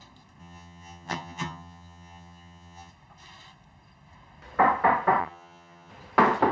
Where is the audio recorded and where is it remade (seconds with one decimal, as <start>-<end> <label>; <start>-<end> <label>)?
0.0-0.4 recorded; 0.4-2.9 remade; 2.9-5.2 recorded; 5.2-5.9 remade; 5.9-6.5 recorded